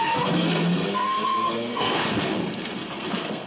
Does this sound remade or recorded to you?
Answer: remade